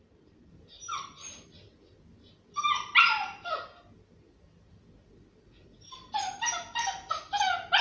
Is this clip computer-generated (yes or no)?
no